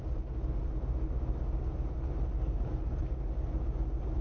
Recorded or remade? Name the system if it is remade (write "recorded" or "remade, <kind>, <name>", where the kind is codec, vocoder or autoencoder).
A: recorded